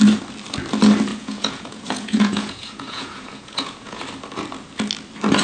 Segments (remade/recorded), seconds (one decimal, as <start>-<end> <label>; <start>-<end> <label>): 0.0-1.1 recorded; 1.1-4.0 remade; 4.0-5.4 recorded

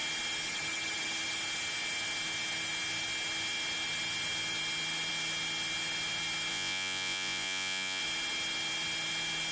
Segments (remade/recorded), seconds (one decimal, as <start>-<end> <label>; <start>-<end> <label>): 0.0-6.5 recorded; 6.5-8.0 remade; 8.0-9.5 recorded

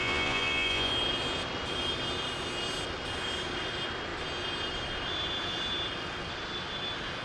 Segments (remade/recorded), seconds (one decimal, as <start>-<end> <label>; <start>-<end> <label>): 0.0-0.9 remade; 0.9-7.2 recorded

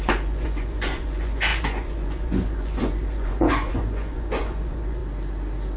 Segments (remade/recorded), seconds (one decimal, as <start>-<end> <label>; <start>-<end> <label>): 0.0-5.0 remade; 5.0-5.8 recorded

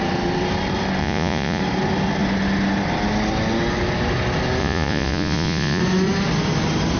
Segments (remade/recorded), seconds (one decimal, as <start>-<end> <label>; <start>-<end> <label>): 0.0-1.0 recorded; 1.0-1.6 remade; 1.6-4.6 recorded; 4.6-5.8 remade; 5.8-7.0 recorded

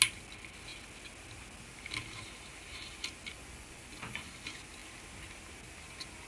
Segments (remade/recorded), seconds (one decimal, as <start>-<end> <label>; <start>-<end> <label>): 0.0-3.3 recorded; 3.3-4.3 remade; 4.3-6.3 recorded

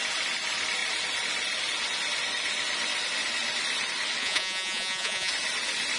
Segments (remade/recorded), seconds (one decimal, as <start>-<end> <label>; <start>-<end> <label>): 0.0-4.2 recorded; 4.2-5.3 remade; 5.3-6.0 recorded